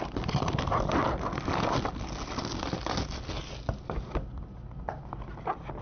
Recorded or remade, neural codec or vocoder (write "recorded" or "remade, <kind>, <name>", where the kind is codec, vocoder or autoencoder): recorded